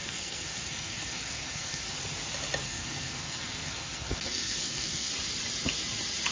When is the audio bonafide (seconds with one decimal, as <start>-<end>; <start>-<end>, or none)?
1.9-2.6; 5.1-6.3